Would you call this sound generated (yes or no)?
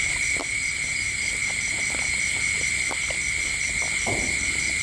no